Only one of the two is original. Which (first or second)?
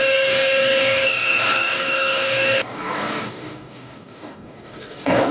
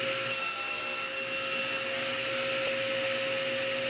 second